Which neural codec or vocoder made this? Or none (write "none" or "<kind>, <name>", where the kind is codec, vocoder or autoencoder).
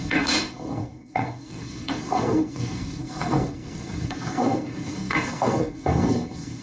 codec, SNAC